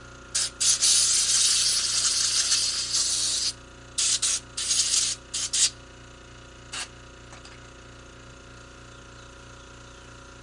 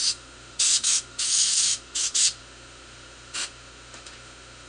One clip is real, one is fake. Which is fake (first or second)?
second